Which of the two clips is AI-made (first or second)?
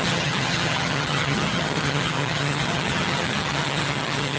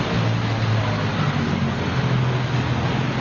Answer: first